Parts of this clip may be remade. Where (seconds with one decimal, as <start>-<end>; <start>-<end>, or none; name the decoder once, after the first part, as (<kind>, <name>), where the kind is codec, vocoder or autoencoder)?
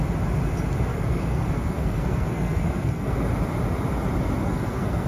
0.9-3.2 (codec, SNAC); 4.4-5.1